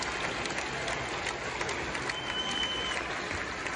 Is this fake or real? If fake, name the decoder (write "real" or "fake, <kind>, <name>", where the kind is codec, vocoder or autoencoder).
real